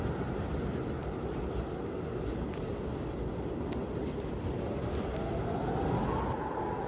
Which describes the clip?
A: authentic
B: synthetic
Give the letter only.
A